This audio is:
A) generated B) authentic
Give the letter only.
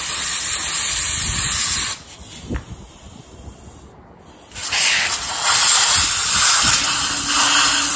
B